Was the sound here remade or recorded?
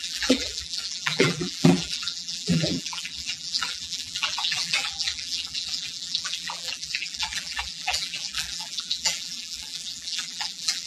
remade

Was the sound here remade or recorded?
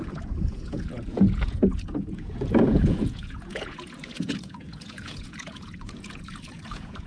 remade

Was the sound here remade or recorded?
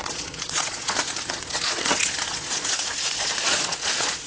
remade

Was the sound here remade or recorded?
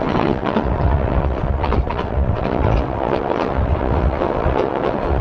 remade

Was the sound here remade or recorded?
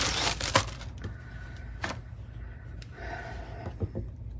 recorded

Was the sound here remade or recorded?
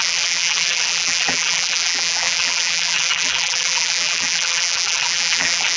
remade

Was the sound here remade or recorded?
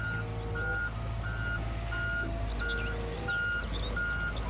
recorded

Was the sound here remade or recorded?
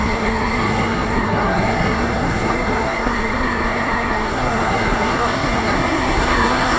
remade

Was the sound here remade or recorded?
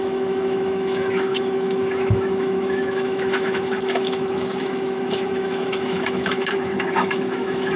remade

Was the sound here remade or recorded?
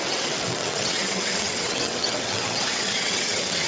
remade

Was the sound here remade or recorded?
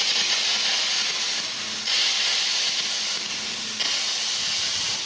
recorded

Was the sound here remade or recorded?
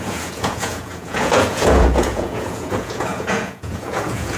remade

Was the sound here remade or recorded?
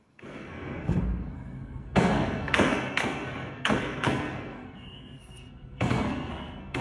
remade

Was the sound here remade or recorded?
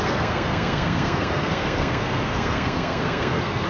remade